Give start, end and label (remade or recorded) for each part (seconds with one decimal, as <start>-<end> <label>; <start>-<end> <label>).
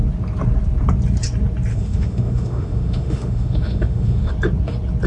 0.0-1.7 recorded; 1.7-4.3 remade; 4.3-5.1 recorded